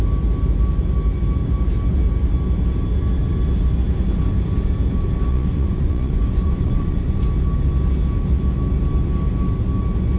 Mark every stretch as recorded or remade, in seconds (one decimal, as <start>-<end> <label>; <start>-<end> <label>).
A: 0.0-5.3 recorded; 5.3-7.2 remade; 7.2-10.2 recorded

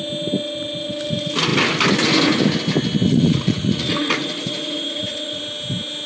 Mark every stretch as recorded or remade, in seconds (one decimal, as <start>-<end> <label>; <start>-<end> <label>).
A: 0.0-3.1 recorded; 3.1-5.4 remade; 5.4-6.1 recorded

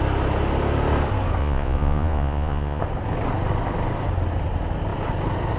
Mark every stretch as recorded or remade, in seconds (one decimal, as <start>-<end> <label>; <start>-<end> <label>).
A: 0.0-1.4 recorded; 1.4-2.8 remade; 2.8-5.6 recorded

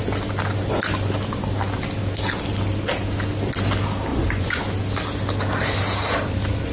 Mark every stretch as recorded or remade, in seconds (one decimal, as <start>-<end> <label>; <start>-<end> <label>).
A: 0.0-4.1 recorded; 4.1-4.6 remade; 4.6-6.7 recorded

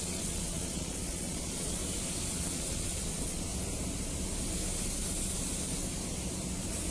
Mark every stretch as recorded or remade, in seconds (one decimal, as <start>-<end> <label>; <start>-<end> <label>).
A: 0.0-1.8 remade; 1.8-2.3 recorded; 2.3-3.5 remade; 3.5-6.9 recorded

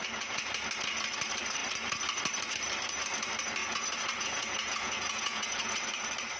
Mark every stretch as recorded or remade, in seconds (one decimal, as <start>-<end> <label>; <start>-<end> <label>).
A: 0.0-0.5 remade; 0.5-3.6 recorded; 3.6-5.8 remade; 5.8-6.4 recorded

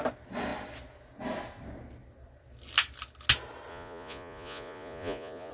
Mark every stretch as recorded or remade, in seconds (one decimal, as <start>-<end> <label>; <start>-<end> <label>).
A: 0.0-3.7 recorded; 3.7-5.5 remade

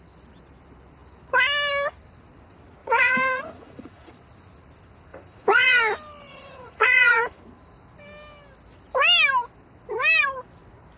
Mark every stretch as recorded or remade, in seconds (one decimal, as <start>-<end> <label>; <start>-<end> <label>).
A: 0.0-2.8 recorded; 2.8-4.1 remade; 4.1-5.1 recorded; 5.1-5.8 remade; 5.8-6.3 recorded; 6.3-7.4 remade; 7.4-11.0 recorded